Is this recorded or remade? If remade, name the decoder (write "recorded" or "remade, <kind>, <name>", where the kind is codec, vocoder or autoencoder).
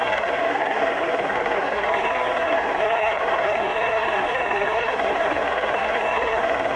remade, codec, SNAC